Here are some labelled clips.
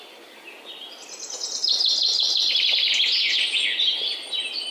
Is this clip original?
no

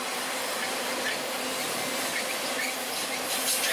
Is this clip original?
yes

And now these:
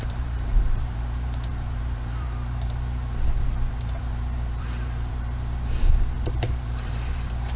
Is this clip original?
no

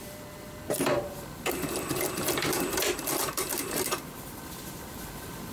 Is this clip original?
no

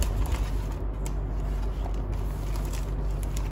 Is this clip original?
yes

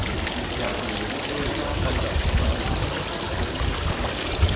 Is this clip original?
yes